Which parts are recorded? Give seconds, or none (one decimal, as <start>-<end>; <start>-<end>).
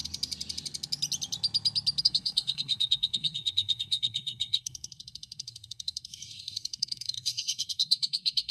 0.0-2.0